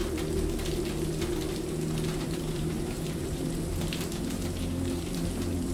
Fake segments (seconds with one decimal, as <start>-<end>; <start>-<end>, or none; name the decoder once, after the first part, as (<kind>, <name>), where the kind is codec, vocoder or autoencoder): 2.1-5.7 (vocoder, BigVGAN v2)